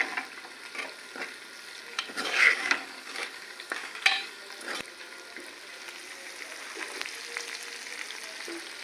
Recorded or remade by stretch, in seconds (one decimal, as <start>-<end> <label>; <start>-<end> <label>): 0.0-1.9 recorded; 1.9-4.4 remade; 4.4-8.8 recorded